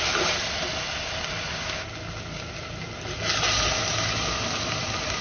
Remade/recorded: recorded